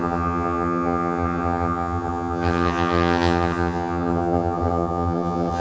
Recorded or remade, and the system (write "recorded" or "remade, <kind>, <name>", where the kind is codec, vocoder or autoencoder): remade, vocoder, HiFi-GAN